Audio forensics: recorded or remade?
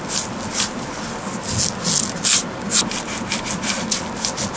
recorded